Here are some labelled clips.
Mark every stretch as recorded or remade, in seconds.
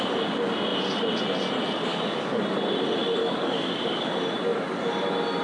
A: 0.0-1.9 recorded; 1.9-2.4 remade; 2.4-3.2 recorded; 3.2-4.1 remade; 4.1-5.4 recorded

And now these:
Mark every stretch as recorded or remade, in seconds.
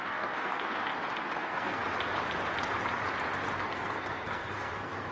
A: 0.0-0.9 remade; 0.9-1.4 recorded; 1.4-1.8 remade; 1.8-3.6 recorded; 3.6-5.1 remade